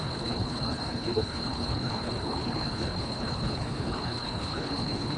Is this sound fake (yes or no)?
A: yes